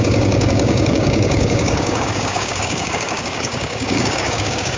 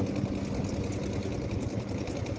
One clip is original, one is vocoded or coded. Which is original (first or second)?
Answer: second